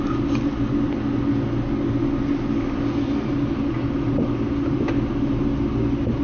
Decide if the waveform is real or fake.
real